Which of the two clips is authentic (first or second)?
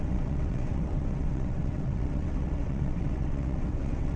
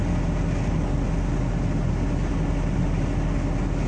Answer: second